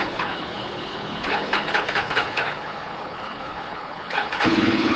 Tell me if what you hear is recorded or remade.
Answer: remade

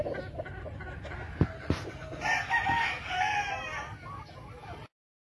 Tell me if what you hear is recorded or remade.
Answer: recorded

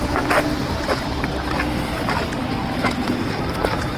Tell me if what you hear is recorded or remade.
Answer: recorded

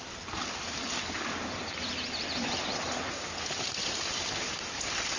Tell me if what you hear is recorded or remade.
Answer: recorded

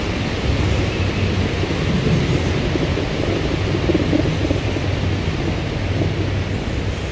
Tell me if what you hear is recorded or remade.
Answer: recorded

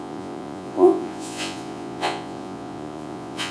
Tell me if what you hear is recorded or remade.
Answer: remade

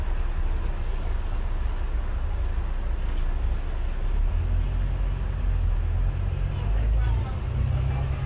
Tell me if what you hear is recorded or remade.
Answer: recorded